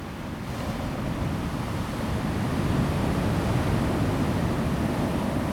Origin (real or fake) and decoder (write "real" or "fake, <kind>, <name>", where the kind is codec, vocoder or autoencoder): real